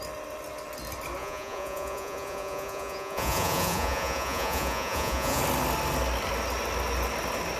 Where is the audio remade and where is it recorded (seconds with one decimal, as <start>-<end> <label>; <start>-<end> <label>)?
0.0-1.2 recorded; 1.2-5.4 remade; 5.4-7.6 recorded